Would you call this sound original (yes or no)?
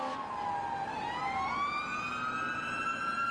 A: yes